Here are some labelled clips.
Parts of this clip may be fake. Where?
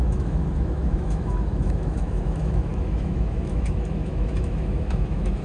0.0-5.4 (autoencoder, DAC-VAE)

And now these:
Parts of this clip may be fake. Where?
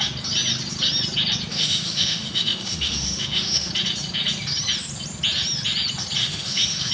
1.5-3.7 (autoencoder, DAC-VAE); 6.2-6.9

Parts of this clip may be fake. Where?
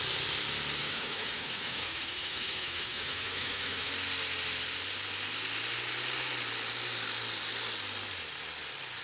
0.8-3.9 (autoencoder, DAC-VAE)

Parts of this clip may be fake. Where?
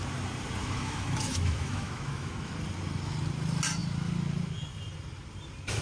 0.6-2.5 (autoencoder, DAC-VAE)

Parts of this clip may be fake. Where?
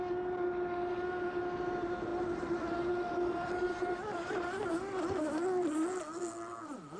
none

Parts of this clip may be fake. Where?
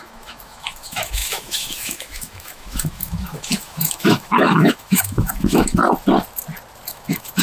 0.0-5.8 (autoencoder, DAC-VAE); 6.9-7.4